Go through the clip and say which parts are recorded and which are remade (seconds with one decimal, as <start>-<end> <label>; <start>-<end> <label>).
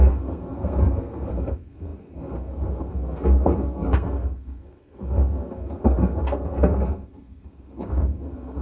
0.0-8.6 remade